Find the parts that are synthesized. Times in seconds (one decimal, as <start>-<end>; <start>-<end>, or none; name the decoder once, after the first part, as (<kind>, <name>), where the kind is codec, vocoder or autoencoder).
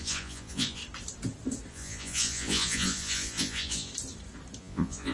0.0-0.8 (vocoder, Vocos); 1.7-3.9; 4.6-5.1